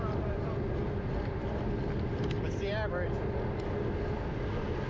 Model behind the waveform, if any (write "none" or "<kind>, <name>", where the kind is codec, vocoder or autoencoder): none